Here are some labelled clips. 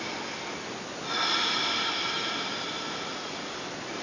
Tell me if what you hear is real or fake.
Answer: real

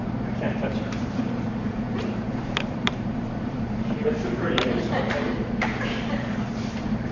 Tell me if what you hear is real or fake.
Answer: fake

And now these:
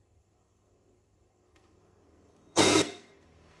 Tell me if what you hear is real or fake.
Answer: fake